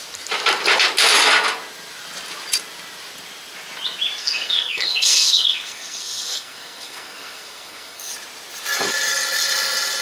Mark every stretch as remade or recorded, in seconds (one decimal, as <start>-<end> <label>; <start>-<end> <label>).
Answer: 0.0-4.2 recorded; 4.2-8.1 remade; 8.1-10.0 recorded